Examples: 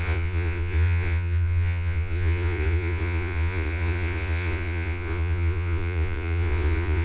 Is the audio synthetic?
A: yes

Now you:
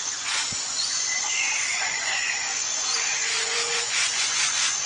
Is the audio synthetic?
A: yes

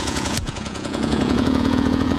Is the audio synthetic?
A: yes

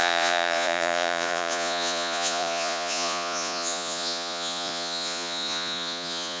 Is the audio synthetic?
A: yes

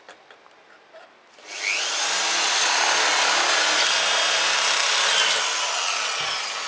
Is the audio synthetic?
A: no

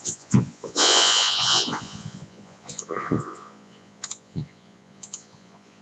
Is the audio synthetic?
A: yes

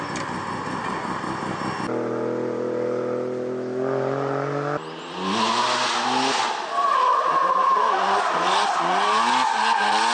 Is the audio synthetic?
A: no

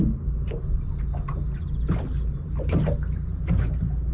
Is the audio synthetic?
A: no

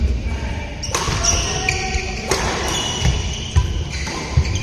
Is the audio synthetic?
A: no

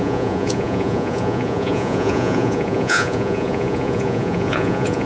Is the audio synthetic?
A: yes